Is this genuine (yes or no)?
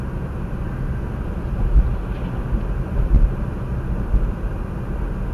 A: yes